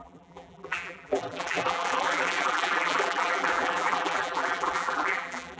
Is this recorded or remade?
remade